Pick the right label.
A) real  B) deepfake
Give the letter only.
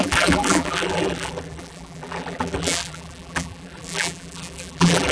B